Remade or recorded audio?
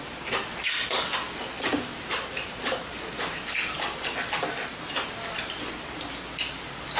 recorded